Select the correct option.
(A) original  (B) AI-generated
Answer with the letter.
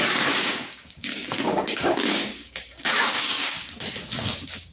B